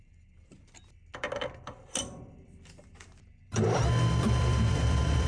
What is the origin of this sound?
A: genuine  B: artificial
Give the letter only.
B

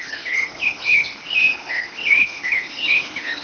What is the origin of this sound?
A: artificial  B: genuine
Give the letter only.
A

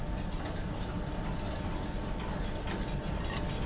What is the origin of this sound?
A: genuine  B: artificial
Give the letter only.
A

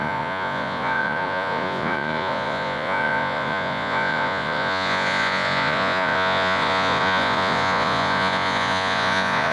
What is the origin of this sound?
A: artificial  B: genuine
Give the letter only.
A